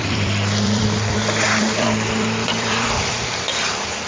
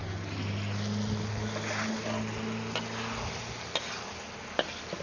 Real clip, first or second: second